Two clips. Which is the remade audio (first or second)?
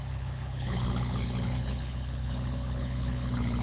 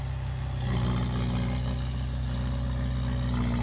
first